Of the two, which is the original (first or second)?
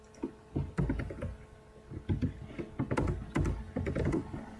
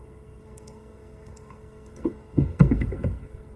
first